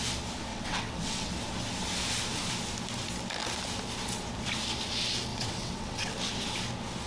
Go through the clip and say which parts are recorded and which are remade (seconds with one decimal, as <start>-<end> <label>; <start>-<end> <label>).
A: 0.0-0.5 recorded; 0.5-1.3 remade; 1.3-5.3 recorded; 5.3-6.1 remade; 6.1-7.1 recorded